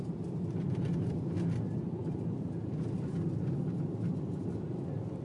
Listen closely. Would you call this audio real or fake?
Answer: fake